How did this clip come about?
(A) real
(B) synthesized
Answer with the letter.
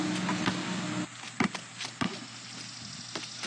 A